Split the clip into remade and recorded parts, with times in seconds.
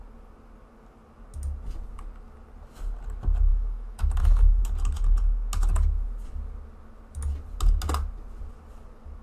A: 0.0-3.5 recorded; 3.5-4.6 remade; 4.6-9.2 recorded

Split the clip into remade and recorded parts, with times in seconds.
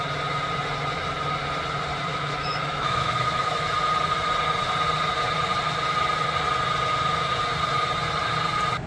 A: 0.0-2.1 recorded; 2.1-3.6 remade; 3.6-8.9 recorded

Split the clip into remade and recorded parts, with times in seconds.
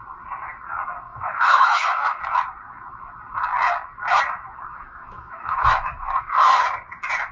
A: 0.0-1.1 recorded; 1.1-2.2 remade; 2.2-4.7 recorded; 4.7-6.6 remade; 6.6-7.3 recorded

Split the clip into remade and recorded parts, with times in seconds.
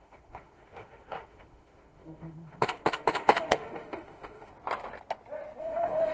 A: 0.0-4.5 remade; 4.5-5.6 recorded; 5.6-6.1 remade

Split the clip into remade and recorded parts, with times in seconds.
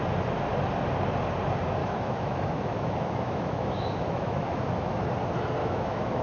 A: 0.0-1.8 recorded; 1.8-5.1 remade; 5.1-5.6 recorded; 5.6-6.2 remade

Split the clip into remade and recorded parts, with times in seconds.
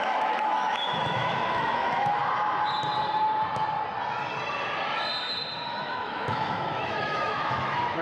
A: 0.0-2.2 remade; 2.2-5.7 recorded; 5.7-8.0 remade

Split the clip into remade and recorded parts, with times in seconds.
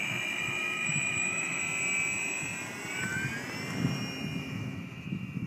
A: 0.0-1.6 remade; 1.6-4.4 recorded; 4.4-5.5 remade